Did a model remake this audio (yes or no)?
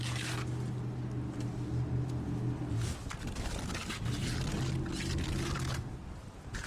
no